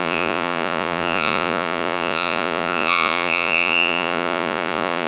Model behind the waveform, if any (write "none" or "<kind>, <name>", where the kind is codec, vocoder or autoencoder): vocoder, Vocos